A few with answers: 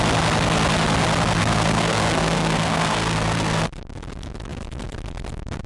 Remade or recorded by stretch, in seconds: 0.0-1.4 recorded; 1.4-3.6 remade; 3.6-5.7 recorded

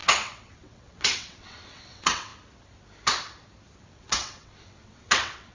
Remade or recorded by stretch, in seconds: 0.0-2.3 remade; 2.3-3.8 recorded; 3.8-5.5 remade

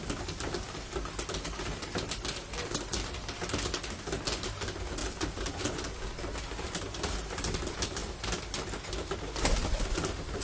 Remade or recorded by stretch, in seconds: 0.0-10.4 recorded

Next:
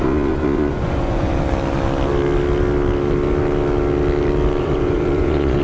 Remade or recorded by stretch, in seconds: 0.0-1.3 remade; 1.3-4.6 recorded; 4.6-5.6 remade

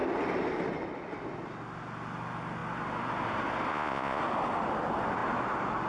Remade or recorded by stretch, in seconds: 0.0-3.7 recorded; 3.7-4.2 remade; 4.2-5.9 recorded

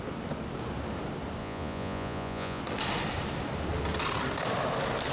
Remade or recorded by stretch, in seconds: 0.0-1.4 recorded; 1.4-2.6 remade; 2.6-5.1 recorded

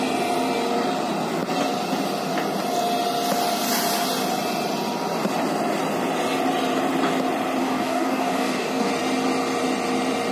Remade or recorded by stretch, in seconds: 0.0-7.6 recorded; 7.6-8.9 remade; 8.9-10.3 recorded